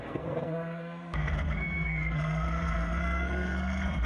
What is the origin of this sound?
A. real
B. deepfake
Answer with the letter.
B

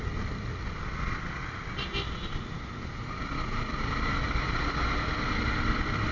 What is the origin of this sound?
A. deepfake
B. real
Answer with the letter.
B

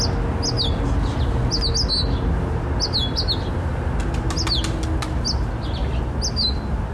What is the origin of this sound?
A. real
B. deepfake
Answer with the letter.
A